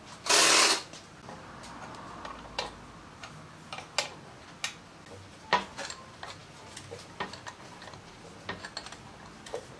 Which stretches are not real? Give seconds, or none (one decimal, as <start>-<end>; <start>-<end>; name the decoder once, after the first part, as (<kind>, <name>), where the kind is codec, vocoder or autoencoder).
none